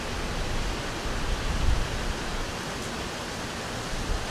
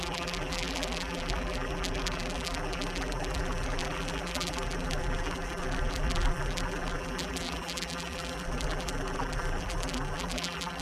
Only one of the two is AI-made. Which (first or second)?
second